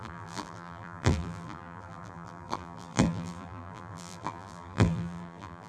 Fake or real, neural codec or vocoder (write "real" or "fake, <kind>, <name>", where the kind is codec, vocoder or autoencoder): fake, vocoder, BigVGAN v2